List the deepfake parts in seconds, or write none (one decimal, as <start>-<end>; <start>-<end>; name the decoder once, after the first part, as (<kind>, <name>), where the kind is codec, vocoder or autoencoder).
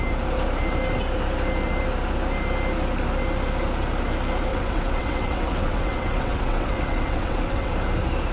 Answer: 4.5-7.7 (vocoder, WaveNeXt)